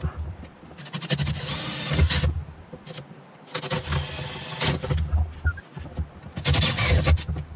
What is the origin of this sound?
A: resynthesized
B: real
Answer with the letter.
B